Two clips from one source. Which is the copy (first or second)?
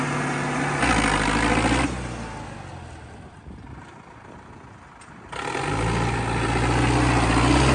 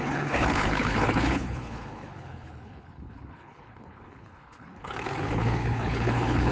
second